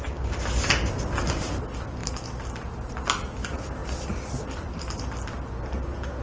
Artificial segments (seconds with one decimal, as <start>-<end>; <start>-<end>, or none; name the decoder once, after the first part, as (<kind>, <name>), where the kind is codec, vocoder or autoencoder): 2.0-2.7 (vocoder, BigVGAN v2); 3.8-5.1